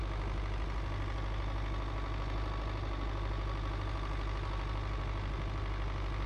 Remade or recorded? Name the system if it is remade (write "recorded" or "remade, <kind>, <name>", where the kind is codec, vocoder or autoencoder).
recorded